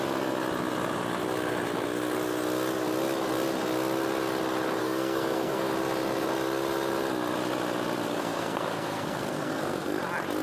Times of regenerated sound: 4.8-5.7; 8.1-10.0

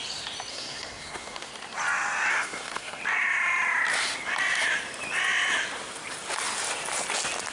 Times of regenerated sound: 0.5-1.5; 2.3-3.0

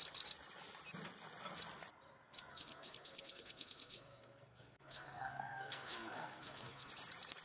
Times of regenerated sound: 2.5-6.9

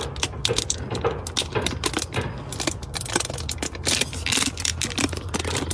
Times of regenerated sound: none

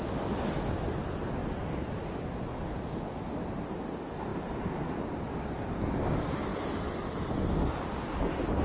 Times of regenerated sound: none

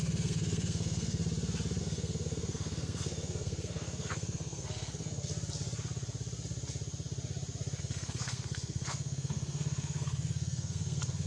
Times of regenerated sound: 0.0-1.2; 1.8-5.3; 7.8-11.3

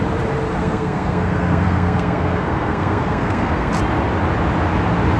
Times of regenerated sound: 0.6-3.7

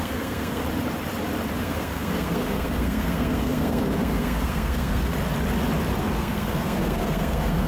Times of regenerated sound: 0.0-0.6; 1.6-5.1; 6.0-7.7